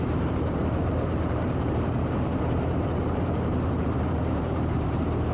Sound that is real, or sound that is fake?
fake